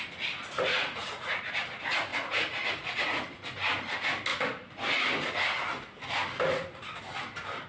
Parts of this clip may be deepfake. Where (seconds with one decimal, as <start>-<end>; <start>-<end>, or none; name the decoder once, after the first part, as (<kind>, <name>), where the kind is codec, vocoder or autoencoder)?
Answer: 0.7-1.5 (vocoder, Vocos); 2.1-3.2